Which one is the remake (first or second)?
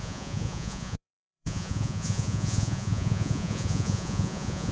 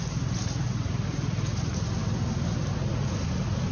first